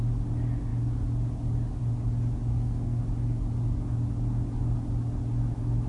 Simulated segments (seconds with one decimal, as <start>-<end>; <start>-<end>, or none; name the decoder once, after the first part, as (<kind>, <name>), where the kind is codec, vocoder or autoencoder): 2.5-3.0 (codec, SNAC)